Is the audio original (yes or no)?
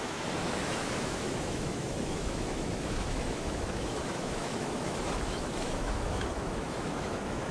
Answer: no